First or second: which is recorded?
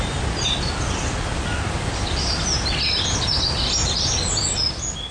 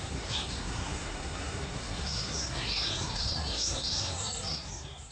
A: first